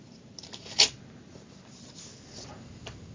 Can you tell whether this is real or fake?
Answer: real